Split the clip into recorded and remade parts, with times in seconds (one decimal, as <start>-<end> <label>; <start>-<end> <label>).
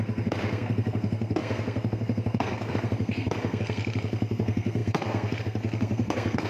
0.0-6.5 remade